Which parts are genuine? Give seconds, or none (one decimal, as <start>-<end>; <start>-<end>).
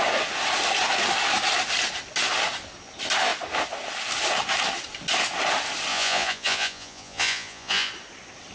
0.0-5.9; 7.9-8.5